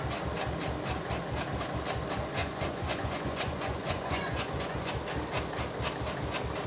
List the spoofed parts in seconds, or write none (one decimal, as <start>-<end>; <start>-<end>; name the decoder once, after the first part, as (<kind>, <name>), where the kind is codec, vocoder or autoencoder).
2.4-4.9 (vocoder, Vocos)